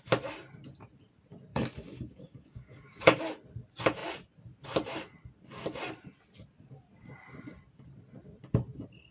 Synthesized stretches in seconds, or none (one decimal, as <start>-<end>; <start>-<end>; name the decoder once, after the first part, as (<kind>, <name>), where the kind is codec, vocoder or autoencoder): 1.5-3.2 (codec, DAC)